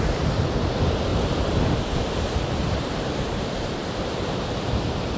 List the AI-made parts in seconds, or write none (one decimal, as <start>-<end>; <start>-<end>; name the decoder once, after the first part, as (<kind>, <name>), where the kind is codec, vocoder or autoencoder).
1.1-4.2 (vocoder, BigVGAN v2)